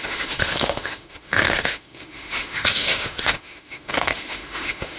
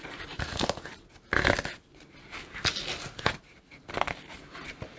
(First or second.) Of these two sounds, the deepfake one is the first